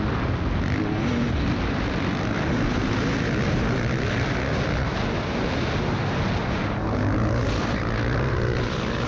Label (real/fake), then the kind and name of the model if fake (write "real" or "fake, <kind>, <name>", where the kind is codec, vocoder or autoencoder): real